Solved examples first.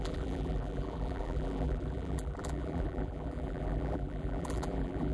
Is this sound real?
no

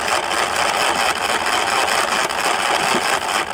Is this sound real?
yes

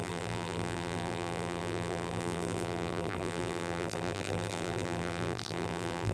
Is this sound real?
no